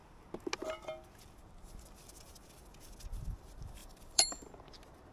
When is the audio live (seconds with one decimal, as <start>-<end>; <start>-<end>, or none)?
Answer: 0.0-3.8; 4.5-5.1